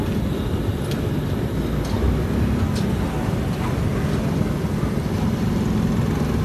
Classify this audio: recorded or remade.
recorded